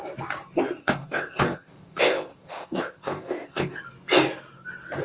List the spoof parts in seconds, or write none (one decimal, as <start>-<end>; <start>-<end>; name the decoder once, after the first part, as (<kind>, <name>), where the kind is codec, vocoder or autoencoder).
0.8-3.8 (codec, ZipCodec)